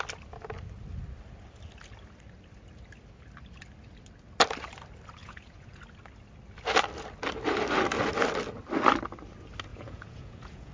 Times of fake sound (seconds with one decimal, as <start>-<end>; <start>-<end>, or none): 5.2-5.8; 9.7-10.7